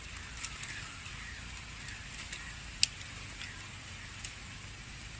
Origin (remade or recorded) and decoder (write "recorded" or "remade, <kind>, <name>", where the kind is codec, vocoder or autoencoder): recorded